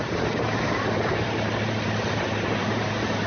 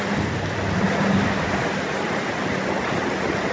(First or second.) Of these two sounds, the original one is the second